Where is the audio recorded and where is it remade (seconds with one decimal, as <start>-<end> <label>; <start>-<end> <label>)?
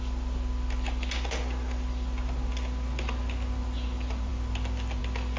0.0-5.4 recorded